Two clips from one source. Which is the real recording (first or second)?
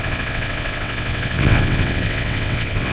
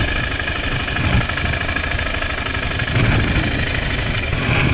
second